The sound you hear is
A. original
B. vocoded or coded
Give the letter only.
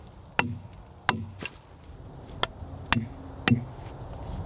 A